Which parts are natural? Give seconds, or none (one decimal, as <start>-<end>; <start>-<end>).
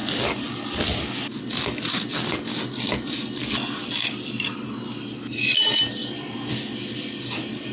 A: 0.0-7.7